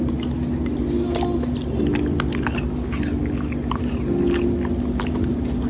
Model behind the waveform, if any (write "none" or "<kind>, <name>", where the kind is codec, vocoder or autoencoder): none